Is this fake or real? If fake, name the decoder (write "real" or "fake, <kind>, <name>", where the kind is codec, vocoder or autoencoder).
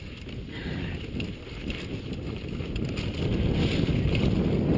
real